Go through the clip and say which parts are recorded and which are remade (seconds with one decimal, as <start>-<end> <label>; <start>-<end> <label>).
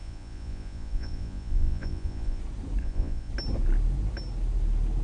0.0-2.4 remade; 2.4-2.8 recorded; 2.8-3.3 remade; 3.3-5.0 recorded